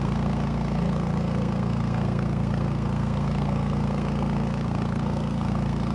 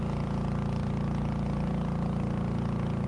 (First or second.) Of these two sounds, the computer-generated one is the first